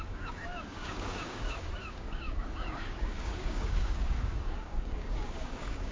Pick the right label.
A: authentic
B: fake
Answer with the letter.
B